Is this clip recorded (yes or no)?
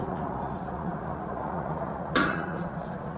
no